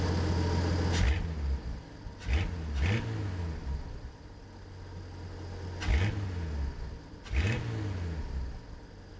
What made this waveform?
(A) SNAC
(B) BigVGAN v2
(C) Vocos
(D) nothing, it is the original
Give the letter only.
D